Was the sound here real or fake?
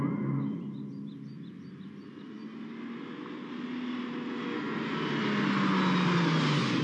real